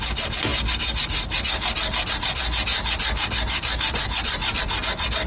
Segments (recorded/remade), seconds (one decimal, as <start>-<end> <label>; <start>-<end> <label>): 0.0-5.3 recorded

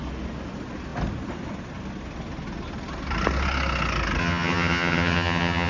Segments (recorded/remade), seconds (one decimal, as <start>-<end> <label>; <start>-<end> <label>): 0.0-4.2 recorded; 4.2-5.7 remade